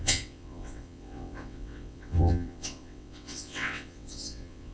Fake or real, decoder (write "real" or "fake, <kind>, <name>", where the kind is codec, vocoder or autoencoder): fake, vocoder, WaveNeXt